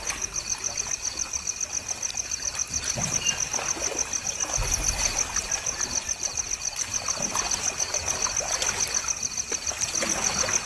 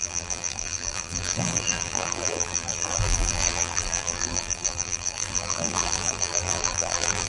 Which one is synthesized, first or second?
second